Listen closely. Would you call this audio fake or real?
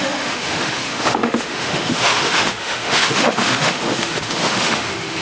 fake